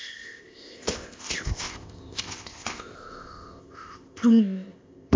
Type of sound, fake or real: fake